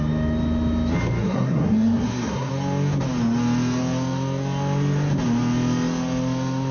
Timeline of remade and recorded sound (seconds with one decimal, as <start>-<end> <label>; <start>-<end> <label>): 0.0-1.2 recorded; 1.2-2.5 remade; 2.5-6.7 recorded